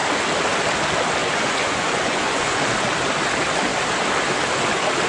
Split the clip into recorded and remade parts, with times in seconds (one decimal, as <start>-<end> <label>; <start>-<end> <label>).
0.0-1.2 recorded; 1.2-2.6 remade; 2.6-5.1 recorded

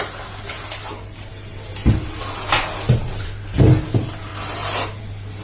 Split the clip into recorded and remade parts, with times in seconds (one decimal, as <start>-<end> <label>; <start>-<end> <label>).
0.0-5.4 recorded

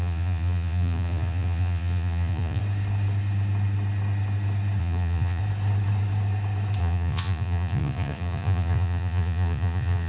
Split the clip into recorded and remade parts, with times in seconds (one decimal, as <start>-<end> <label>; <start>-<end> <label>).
0.0-2.6 remade; 2.6-4.8 recorded; 4.8-5.4 remade; 5.4-6.8 recorded; 6.8-10.1 remade